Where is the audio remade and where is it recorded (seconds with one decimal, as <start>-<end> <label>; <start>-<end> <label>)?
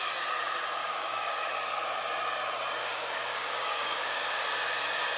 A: 0.0-0.8 recorded; 0.8-1.5 remade; 1.5-2.8 recorded; 2.8-4.4 remade; 4.4-5.2 recorded